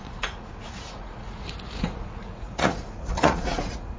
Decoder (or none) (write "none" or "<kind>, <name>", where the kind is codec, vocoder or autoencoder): vocoder, Vocos